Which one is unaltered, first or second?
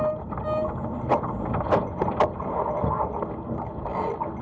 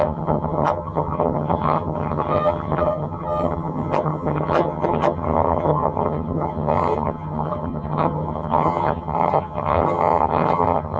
first